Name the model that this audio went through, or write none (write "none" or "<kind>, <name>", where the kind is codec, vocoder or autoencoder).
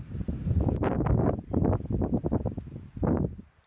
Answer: vocoder, BigVGAN v2